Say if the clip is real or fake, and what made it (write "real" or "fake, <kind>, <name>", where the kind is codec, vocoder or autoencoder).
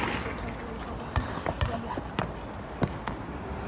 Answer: real